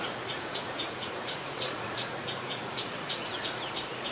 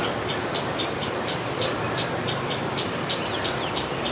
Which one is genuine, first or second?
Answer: second